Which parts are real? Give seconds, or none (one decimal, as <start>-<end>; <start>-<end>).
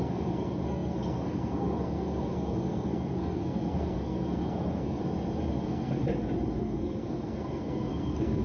5.0-5.5; 6.0-6.6